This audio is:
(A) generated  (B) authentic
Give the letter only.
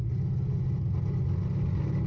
B